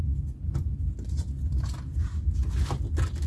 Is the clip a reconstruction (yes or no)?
no